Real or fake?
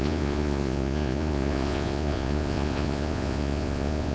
fake